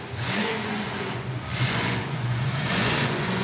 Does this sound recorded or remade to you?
remade